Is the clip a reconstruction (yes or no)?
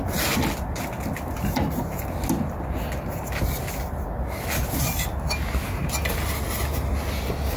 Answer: no